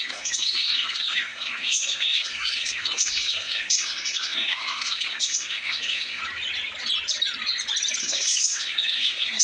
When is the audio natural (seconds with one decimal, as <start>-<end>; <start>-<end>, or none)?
6.2-8.0